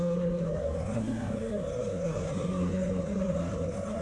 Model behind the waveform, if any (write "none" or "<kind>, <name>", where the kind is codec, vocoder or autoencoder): codec, SNAC